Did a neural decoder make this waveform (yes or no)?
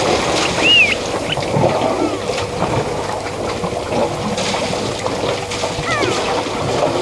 no